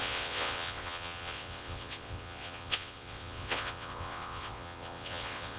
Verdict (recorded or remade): remade